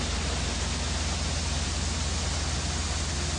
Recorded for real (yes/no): yes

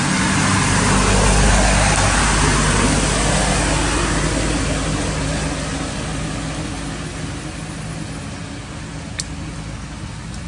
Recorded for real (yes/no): yes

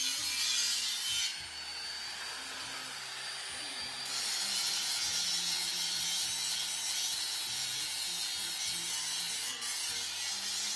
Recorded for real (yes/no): yes